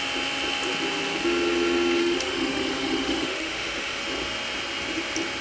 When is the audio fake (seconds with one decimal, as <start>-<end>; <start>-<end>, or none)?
2.0-4.0